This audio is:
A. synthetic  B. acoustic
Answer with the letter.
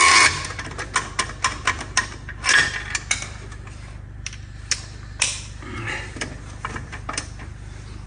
B